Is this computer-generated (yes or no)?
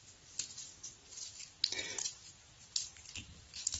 no